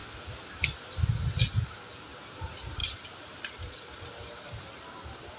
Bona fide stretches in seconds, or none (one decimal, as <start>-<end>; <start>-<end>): 0.0-2.8; 4.6-5.4